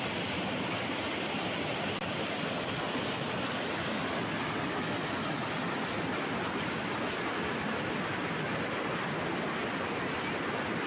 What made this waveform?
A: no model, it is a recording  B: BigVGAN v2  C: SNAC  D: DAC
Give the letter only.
A